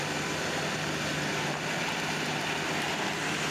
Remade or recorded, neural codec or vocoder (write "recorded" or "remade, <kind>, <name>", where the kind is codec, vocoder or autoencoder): recorded